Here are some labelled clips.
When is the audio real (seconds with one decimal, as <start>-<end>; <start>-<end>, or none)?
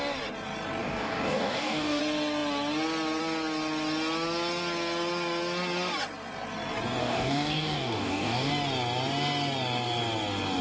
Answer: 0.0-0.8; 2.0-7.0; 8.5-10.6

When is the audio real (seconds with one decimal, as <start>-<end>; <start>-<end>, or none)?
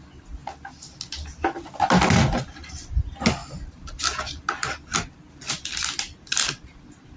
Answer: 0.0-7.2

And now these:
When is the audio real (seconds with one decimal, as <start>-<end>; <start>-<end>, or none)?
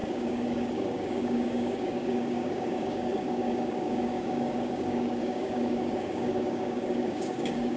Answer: none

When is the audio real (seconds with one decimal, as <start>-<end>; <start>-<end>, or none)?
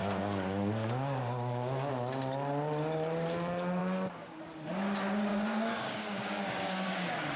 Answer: 1.9-3.8; 4.4-5.3